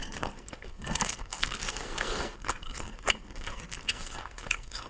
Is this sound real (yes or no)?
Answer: no